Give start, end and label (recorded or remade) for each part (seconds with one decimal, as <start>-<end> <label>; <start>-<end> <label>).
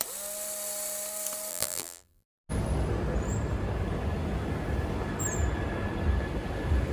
0.0-1.5 recorded; 1.5-2.4 remade; 2.4-6.9 recorded